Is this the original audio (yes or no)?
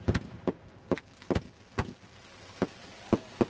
yes